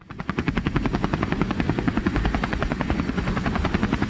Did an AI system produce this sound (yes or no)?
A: yes